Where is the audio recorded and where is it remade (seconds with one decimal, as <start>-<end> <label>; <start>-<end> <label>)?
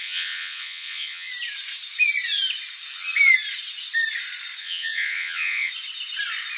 0.0-1.3 remade; 1.3-4.6 recorded; 4.6-5.7 remade; 5.7-6.6 recorded